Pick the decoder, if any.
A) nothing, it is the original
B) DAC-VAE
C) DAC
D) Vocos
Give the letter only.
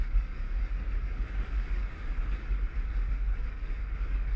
C